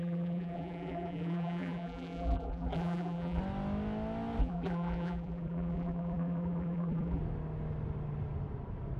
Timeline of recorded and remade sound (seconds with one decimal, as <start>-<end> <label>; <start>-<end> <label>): 0.0-3.4 remade; 3.4-4.4 recorded; 4.4-7.2 remade; 7.2-9.0 recorded